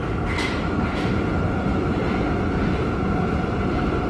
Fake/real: real